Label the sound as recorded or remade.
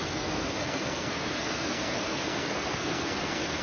remade